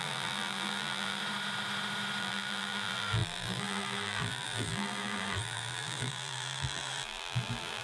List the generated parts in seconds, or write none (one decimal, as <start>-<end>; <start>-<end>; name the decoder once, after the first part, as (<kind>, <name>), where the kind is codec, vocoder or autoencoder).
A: 0.0-1.2 (vocoder, BigVGAN v2); 2.2-7.8